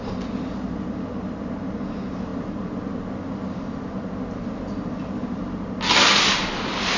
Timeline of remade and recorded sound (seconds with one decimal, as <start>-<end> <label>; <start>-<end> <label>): 0.0-7.0 recorded